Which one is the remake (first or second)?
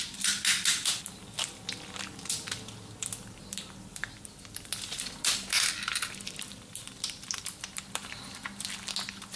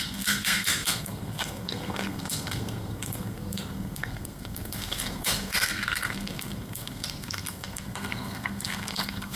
second